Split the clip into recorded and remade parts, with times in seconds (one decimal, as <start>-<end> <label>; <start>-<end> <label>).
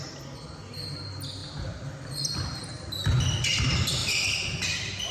0.0-4.0 recorded; 4.0-4.6 remade; 4.6-5.1 recorded